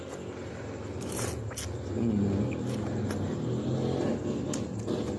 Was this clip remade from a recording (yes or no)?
no